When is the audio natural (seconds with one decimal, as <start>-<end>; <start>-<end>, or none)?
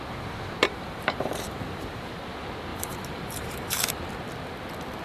0.0-0.6; 2.2-2.7; 4.1-5.0